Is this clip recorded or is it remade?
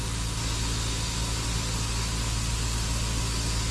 recorded